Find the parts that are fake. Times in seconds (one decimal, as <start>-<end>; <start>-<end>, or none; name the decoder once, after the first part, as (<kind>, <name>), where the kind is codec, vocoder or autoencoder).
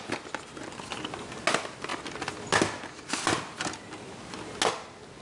none